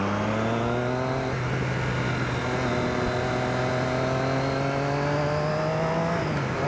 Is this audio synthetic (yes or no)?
no